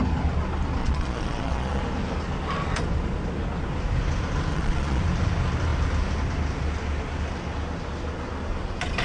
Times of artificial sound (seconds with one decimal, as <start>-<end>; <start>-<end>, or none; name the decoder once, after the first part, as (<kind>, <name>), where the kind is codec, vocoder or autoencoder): 0.8-1.8 (vocoder, Vocos); 4.5-5.0